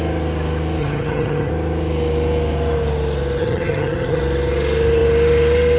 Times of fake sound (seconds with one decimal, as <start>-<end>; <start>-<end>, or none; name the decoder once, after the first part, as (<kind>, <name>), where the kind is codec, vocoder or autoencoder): 0.8-1.5 (vocoder, HiFi-GAN); 3.4-4.2